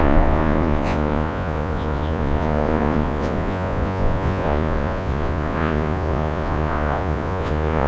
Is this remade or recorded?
remade